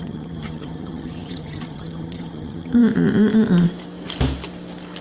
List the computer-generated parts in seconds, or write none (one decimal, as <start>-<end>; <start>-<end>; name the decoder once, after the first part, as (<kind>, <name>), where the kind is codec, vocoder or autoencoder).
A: 0.0-2.8 (vocoder, HiFi-GAN)